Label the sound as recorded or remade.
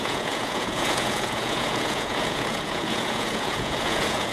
remade